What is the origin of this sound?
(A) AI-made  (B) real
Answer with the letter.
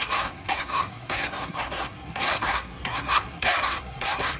A